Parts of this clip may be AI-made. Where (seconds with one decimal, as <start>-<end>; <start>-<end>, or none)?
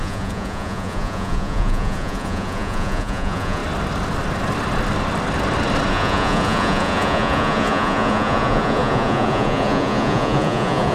0.0-3.6; 5.9-10.9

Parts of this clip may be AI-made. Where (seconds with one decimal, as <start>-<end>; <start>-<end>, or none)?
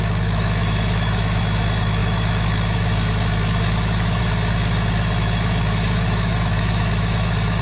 0.0-7.6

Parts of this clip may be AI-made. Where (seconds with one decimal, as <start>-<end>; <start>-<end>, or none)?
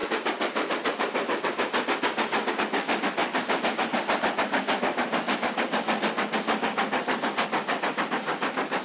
none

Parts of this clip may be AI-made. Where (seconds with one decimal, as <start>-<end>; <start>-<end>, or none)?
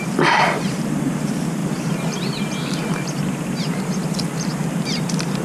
0.0-5.4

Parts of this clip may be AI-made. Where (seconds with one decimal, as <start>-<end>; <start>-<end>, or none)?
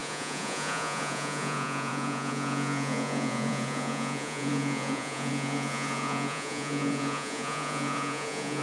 0.0-8.6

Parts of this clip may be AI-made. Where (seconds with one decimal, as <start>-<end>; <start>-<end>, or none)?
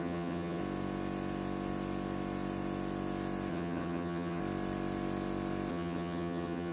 0.0-0.6; 3.5-4.4; 5.7-6.7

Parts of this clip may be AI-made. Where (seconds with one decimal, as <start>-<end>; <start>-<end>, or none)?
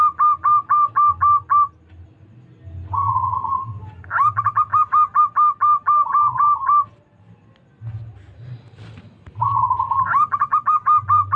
10.5-11.4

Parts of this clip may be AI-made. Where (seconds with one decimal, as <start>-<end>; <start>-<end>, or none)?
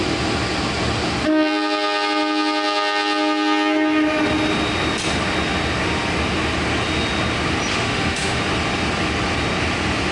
7.7-8.4